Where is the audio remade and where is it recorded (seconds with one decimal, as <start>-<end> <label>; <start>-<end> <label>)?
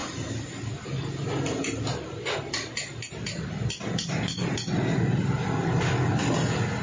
0.0-6.8 recorded